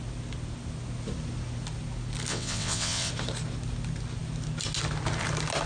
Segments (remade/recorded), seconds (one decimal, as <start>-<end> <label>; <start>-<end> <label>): 0.0-2.3 recorded; 2.3-3.1 remade; 3.1-5.7 recorded